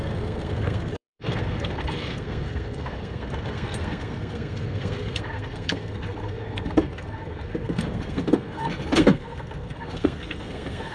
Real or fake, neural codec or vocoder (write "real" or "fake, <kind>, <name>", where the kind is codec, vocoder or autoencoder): fake, codec, SNAC